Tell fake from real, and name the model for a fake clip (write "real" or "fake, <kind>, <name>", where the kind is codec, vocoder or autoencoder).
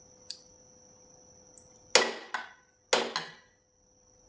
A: real